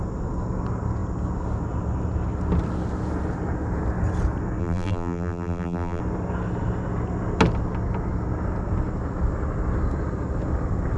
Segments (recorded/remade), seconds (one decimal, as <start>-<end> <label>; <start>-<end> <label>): 0.0-4.6 recorded; 4.6-6.0 remade; 6.0-11.0 recorded